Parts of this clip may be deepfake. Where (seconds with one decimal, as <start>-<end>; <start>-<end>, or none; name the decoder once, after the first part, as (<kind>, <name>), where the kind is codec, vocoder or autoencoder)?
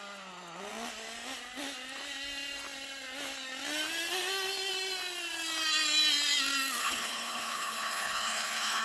6.8-8.8 (codec, HILCodec)